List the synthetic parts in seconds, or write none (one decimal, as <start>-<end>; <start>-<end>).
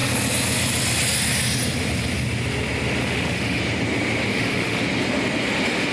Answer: 3.0-3.6; 4.3-4.8